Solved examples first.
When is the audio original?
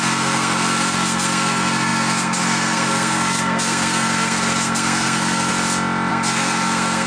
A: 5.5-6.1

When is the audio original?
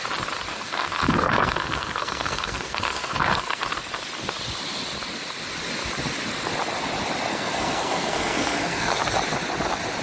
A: 0.0-0.5; 3.6-7.3; 9.0-10.0